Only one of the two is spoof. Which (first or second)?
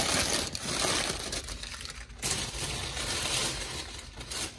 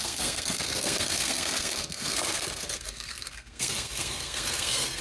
second